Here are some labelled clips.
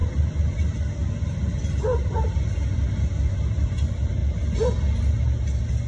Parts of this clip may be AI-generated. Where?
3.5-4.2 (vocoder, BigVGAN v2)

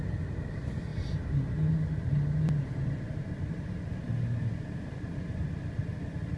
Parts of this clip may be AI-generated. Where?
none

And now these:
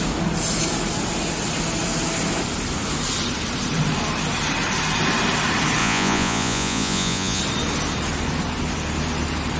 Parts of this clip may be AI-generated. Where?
5.8-7.4 (vocoder, Vocos)

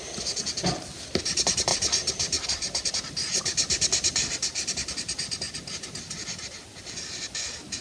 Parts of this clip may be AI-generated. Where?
none

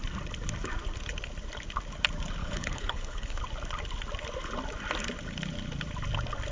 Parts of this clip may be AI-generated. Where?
2.4-3.4 (codec, HILCodec)

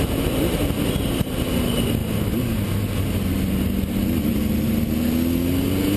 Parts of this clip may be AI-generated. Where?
none

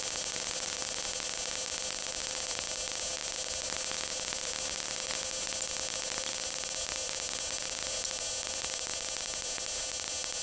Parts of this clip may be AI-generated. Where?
none

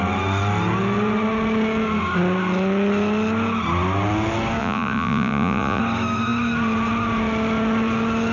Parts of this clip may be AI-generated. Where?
4.6-5.8 (vocoder, Vocos)